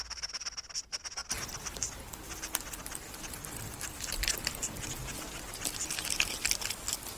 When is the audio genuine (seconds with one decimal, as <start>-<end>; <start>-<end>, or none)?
none